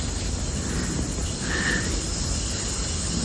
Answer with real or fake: real